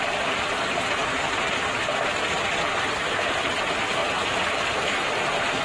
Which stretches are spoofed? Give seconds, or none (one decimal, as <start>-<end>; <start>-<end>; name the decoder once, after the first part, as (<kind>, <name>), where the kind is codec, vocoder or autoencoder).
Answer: 4.0-4.7 (vocoder, BigVGAN v2)

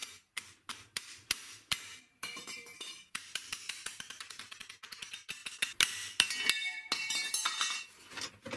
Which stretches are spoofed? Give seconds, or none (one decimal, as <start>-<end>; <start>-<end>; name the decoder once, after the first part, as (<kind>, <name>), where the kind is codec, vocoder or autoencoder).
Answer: 0.0-4.2 (vocoder, BigVGAN v2)

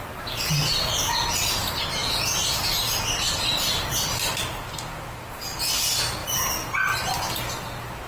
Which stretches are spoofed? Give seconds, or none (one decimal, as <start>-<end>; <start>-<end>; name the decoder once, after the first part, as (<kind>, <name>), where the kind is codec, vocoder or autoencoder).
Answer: 2.0-3.4 (vocoder, BigVGAN v2); 6.2-7.4